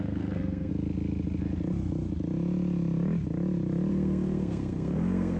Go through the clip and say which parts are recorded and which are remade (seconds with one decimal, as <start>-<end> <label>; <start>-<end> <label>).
0.0-0.7 remade; 0.7-3.9 recorded; 3.9-5.4 remade